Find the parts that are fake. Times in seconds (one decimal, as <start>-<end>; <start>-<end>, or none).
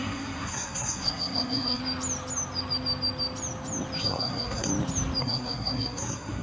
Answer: 0.0-1.8; 4.0-4.7; 5.2-6.4